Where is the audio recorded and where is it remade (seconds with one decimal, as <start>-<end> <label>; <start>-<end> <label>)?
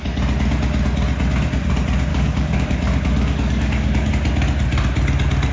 0.0-2.1 recorded; 2.1-4.1 remade; 4.1-5.5 recorded